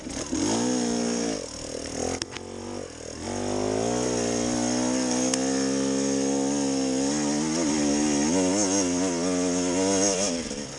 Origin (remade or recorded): recorded